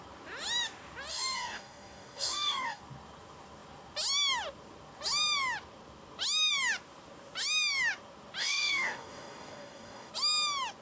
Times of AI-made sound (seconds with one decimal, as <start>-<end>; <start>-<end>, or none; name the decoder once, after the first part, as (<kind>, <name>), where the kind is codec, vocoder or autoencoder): 1.1-2.8 (codec, DAC); 8.4-10.1